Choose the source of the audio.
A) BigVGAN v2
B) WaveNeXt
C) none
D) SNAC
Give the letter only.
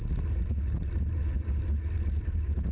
C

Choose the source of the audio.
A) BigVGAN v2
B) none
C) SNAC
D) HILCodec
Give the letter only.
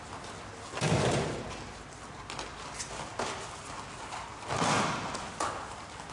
B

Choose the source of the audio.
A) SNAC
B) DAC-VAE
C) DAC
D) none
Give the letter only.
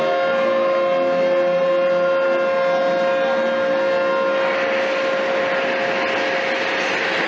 D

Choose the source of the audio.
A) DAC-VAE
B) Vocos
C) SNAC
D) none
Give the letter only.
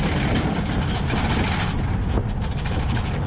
D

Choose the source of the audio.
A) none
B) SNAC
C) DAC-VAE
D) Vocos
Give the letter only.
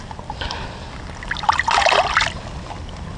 A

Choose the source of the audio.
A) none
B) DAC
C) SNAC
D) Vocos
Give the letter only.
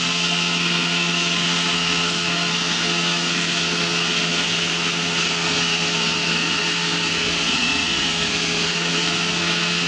C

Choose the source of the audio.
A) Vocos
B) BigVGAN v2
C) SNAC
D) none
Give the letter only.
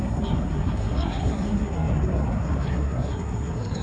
C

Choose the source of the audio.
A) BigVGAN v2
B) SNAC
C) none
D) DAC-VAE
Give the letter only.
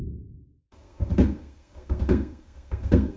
B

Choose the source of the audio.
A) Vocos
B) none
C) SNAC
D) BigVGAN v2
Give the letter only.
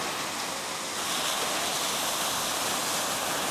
B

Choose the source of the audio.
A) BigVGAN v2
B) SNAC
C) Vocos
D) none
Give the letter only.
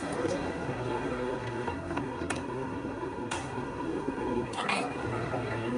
B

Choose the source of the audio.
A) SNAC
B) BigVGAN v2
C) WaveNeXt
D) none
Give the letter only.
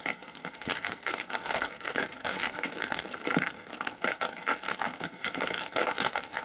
A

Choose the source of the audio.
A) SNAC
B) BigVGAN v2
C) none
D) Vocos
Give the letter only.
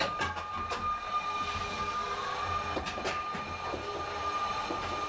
C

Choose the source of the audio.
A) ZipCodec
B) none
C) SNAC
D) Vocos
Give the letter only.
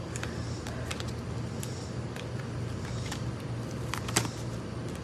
B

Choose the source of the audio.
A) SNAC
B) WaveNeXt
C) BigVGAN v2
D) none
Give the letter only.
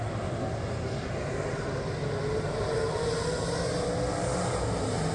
D